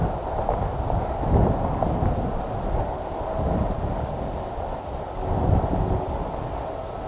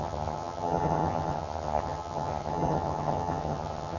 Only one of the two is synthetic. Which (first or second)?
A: second